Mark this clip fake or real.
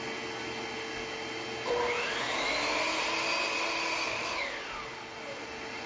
real